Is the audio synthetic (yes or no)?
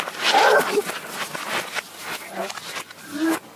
no